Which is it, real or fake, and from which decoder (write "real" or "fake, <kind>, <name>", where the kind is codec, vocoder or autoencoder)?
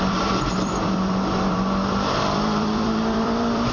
fake, vocoder, BigVGAN v2